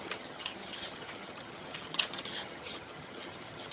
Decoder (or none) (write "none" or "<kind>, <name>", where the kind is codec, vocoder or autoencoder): vocoder, HiFi-GAN